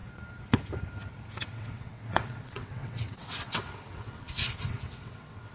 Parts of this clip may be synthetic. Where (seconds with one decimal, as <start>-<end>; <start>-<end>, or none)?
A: 1.4-5.5